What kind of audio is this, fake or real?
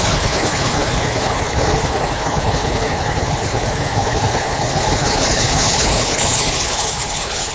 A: fake